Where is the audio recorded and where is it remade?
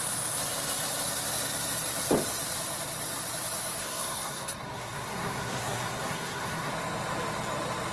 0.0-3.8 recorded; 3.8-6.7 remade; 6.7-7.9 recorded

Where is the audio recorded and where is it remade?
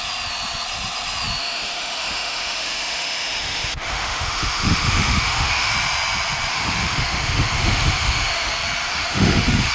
0.0-1.4 recorded; 1.4-5.7 remade; 5.7-6.5 recorded; 6.5-8.5 remade; 8.5-8.9 recorded; 8.9-9.7 remade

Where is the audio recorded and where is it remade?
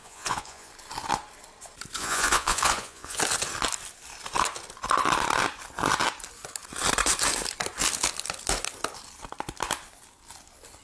0.0-0.7 remade; 0.7-2.0 recorded; 2.0-3.2 remade; 3.2-10.8 recorded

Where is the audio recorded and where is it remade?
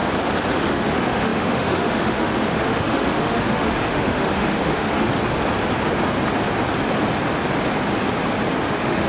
0.0-0.5 recorded; 0.5-5.1 remade; 5.1-8.6 recorded; 8.6-9.1 remade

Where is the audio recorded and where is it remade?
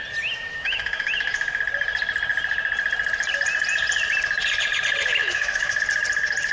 0.0-0.5 recorded; 0.5-1.6 remade; 1.6-5.2 recorded; 5.2-5.8 remade; 5.8-6.5 recorded